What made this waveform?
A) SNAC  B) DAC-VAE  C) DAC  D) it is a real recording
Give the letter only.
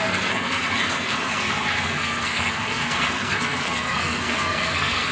A